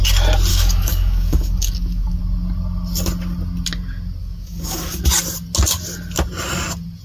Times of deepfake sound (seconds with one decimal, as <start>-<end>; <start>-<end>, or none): 0.5-2.2; 4.2-5.0